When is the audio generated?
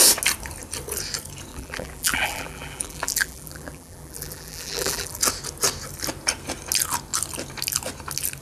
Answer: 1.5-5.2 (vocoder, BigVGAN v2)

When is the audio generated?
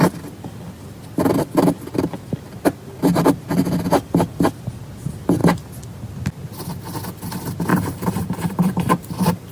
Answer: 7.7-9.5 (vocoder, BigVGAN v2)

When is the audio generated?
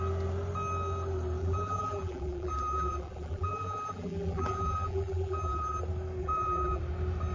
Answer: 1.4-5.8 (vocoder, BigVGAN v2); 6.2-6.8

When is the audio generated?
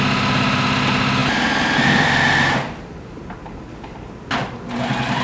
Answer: none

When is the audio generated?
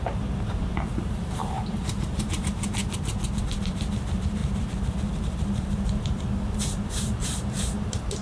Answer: 0.0-2.8 (vocoder, BigVGAN v2); 3.4-4.4; 5.2-8.2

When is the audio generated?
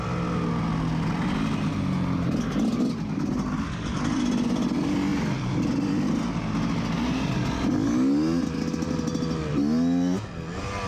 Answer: 5.1-6.3 (vocoder, BigVGAN v2)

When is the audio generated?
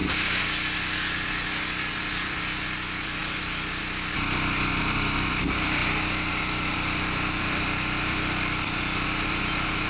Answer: 2.1-5.8 (vocoder, BigVGAN v2); 6.7-9.9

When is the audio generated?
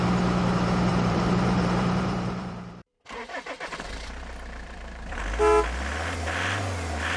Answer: 0.9-5.2 (vocoder, BigVGAN v2)